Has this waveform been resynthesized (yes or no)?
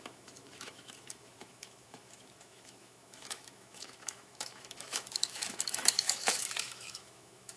yes